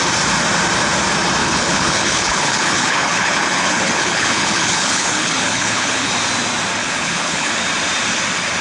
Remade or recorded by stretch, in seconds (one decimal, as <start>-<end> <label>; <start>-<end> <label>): 0.0-1.4 recorded; 1.4-6.1 remade; 6.1-6.8 recorded; 6.8-7.5 remade; 7.5-8.6 recorded